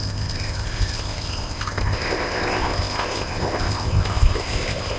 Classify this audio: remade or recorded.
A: remade